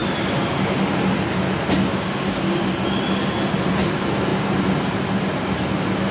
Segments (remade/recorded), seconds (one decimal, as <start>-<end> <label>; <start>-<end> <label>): 0.0-6.1 recorded